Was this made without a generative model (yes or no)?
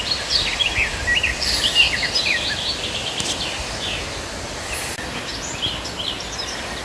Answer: yes